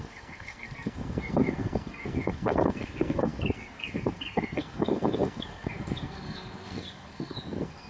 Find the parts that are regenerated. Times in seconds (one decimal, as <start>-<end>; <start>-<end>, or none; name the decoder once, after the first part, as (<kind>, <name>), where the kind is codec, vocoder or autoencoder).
0.0-7.9 (codec, SNAC)